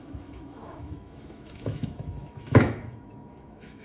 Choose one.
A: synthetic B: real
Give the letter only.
A